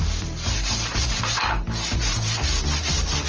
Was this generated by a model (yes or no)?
yes